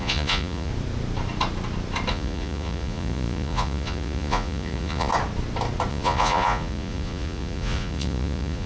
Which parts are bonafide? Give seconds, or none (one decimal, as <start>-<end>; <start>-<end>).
0.7-2.1; 5.1-5.9